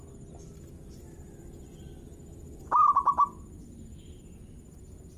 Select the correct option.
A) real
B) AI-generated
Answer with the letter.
A